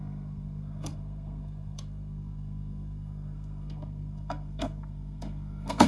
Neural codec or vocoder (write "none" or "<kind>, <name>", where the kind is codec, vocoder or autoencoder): codec, SNAC